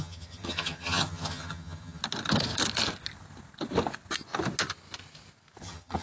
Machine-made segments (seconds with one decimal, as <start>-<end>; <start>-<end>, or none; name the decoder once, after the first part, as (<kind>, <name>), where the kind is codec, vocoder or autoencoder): 0.0-2.0 (vocoder, HiFi-GAN); 5.6-6.0